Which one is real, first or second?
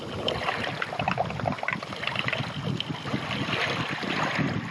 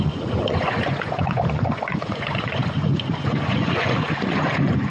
first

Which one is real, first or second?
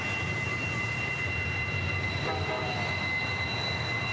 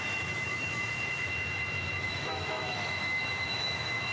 first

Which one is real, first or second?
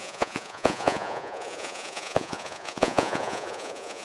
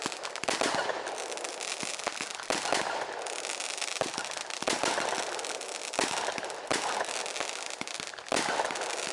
second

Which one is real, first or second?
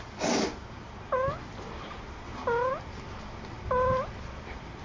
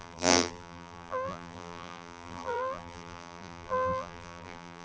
first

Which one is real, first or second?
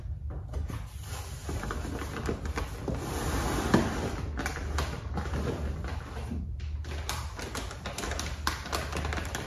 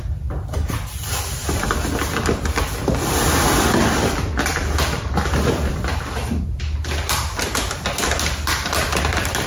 first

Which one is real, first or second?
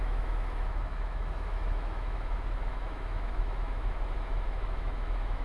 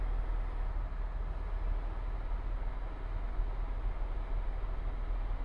second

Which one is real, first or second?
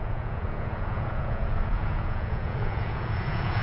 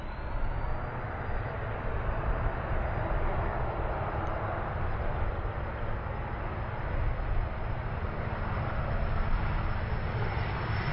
second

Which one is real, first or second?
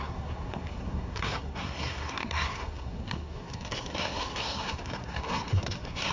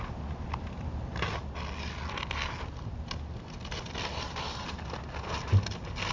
second